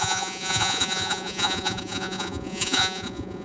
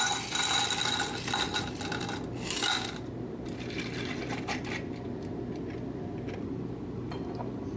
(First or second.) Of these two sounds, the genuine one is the second